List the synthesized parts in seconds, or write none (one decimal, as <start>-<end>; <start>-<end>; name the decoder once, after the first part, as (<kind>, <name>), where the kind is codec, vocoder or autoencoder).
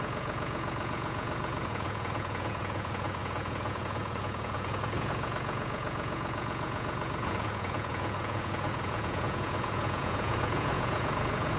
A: 0.0-11.6 (vocoder, Vocos)